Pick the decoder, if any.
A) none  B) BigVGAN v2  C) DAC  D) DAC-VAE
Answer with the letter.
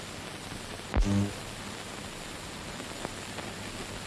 A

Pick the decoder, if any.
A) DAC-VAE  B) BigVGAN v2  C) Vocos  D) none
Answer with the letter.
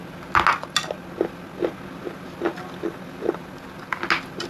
D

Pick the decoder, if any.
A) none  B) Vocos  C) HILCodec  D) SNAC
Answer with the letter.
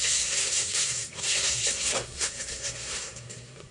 D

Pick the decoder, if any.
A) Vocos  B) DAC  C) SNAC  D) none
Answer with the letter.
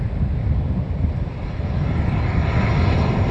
D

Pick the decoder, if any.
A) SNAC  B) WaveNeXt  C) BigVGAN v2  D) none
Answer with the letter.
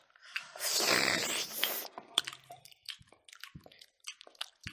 D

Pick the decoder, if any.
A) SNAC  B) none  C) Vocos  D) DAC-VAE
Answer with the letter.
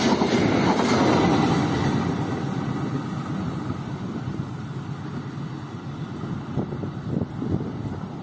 B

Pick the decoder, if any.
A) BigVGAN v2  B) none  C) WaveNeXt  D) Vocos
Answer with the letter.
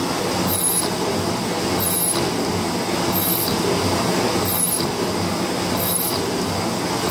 B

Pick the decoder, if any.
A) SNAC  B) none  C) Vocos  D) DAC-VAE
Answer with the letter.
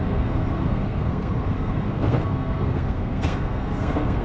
A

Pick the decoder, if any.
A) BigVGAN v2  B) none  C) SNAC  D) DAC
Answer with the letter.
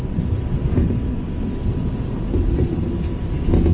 B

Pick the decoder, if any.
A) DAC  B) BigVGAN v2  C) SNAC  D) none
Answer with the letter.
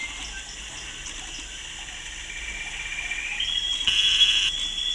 D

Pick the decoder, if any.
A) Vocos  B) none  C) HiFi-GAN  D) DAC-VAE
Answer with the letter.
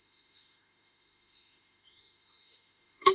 D